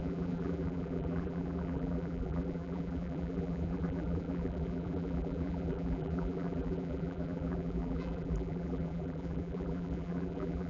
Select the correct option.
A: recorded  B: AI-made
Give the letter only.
B